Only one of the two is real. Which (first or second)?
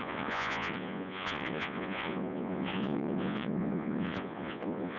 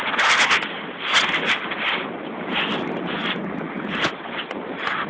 second